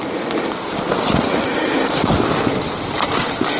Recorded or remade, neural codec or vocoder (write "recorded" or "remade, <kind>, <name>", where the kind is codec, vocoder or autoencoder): remade, vocoder, BigVGAN v2